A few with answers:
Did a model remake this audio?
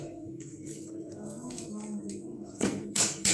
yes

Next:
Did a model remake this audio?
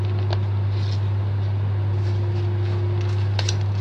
no